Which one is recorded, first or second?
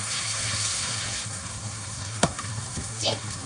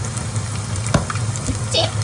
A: second